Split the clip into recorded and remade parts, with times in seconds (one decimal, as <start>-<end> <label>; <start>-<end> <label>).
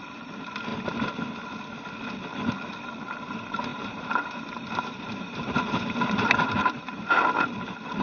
0.0-0.7 remade; 0.7-3.3 recorded; 3.3-8.0 remade